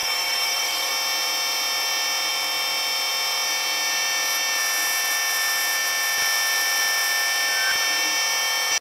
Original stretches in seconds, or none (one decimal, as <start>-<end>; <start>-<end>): 0.9-8.8

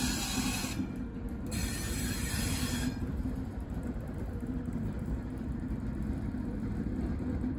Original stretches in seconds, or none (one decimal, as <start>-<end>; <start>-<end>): 0.0-1.6; 5.3-7.6

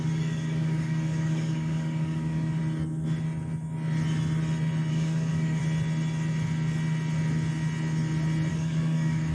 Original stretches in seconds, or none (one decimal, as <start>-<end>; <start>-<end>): 2.6-4.9; 5.6-8.5

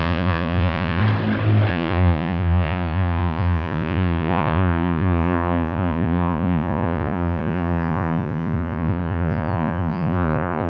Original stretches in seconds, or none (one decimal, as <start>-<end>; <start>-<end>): 1.0-1.7

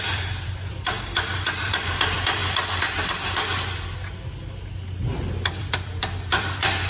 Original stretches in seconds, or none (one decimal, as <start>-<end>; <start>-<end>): 2.4-5.5

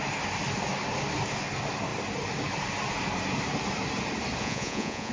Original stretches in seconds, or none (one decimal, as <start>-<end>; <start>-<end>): 0.0-4.4

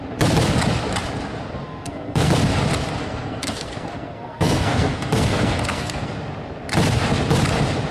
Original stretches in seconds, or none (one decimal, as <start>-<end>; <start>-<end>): 0.0-1.6; 2.3-3.0; 6.1-7.9

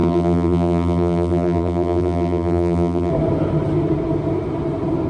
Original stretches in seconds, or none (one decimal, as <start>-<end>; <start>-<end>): 3.1-5.1